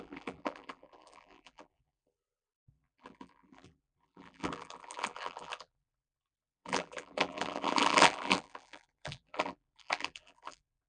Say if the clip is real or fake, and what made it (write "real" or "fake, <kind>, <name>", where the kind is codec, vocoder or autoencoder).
fake, vocoder, BigVGAN v2